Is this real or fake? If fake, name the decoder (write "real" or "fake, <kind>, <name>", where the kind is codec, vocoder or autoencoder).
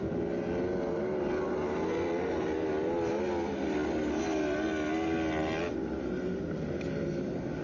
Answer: real